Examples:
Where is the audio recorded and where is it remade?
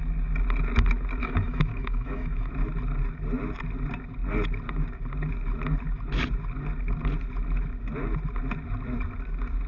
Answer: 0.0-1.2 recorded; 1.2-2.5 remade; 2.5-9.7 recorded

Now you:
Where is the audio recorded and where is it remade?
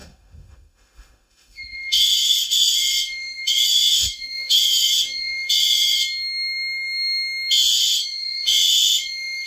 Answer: 0.0-6.0 remade; 6.0-7.7 recorded; 7.7-9.5 remade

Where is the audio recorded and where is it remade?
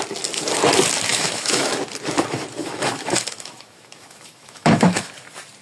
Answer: 0.0-1.1 recorded; 1.1-1.7 remade; 1.7-2.6 recorded; 2.6-5.1 remade; 5.1-5.6 recorded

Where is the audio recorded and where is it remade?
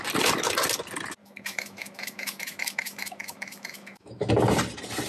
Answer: 0.0-1.2 recorded; 1.2-4.3 remade; 4.3-5.1 recorded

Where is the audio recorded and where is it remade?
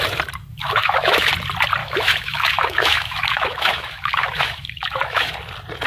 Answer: 0.0-0.5 recorded; 0.5-1.3 remade; 1.3-1.8 recorded; 1.8-5.3 remade; 5.3-5.9 recorded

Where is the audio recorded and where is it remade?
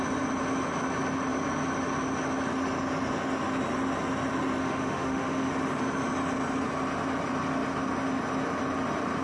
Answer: 0.0-4.6 recorded; 4.6-5.5 remade; 5.5-9.2 recorded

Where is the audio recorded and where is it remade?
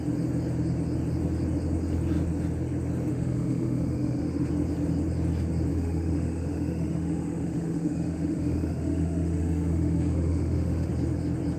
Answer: 0.0-3.1 recorded; 3.1-4.5 remade; 4.5-5.7 recorded; 5.7-10.9 remade; 10.9-11.6 recorded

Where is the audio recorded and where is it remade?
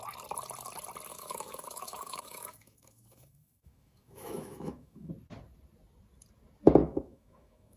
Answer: 0.0-1.1 recorded; 1.1-5.1 remade; 5.1-6.8 recorded; 6.8-7.8 remade